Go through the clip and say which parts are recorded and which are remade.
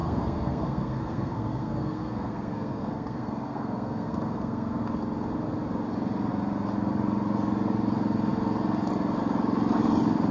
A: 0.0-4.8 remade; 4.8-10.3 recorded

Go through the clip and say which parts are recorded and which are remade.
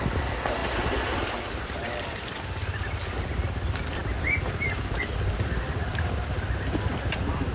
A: 0.0-4.0 remade; 4.0-5.5 recorded; 5.5-7.5 remade